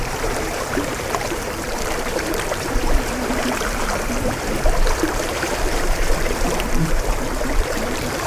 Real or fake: fake